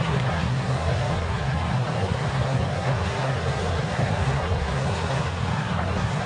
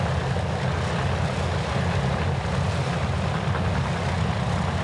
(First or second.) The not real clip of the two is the first